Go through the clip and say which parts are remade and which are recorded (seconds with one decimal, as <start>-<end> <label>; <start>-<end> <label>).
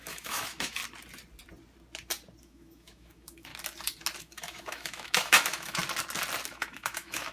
0.0-0.8 remade; 0.8-2.4 recorded; 2.4-3.5 remade; 3.5-4.2 recorded; 4.2-5.8 remade; 5.8-6.5 recorded; 6.5-7.3 remade